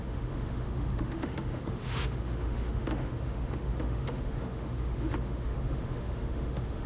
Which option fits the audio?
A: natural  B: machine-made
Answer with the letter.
B